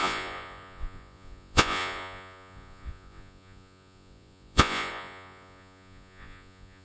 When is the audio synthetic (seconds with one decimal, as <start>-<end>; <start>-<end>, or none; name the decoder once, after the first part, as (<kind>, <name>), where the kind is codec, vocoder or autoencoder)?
0.0-6.8 (vocoder, Vocos)